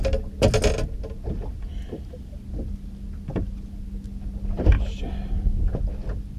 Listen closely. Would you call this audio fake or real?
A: real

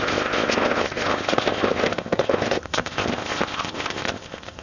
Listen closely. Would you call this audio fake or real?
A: fake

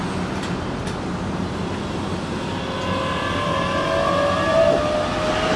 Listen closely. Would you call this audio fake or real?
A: real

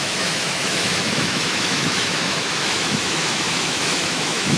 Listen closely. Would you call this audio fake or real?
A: fake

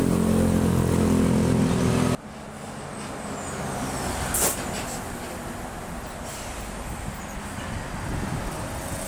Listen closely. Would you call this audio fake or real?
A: real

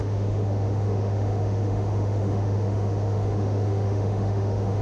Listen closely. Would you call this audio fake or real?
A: fake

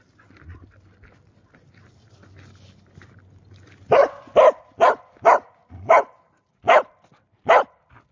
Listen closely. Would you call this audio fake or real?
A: real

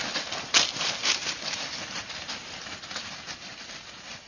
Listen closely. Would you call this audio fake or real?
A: real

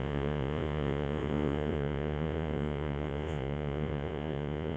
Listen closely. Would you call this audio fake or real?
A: fake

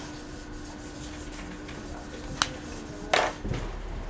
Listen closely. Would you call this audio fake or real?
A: real